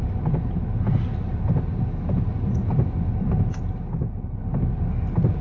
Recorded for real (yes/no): yes